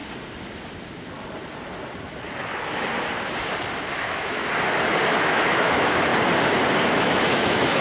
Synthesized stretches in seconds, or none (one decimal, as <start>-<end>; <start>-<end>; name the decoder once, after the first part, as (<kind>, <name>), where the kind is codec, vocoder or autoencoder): 3.9-4.4 (autoencoder, DAC-VAE); 5.0-6.1; 6.8-7.8